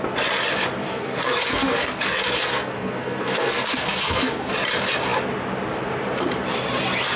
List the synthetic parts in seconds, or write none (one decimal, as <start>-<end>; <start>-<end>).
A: 0.8-4.5